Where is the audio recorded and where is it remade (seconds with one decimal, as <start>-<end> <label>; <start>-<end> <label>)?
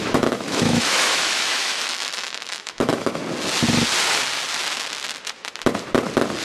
0.0-3.2 remade; 3.2-6.4 recorded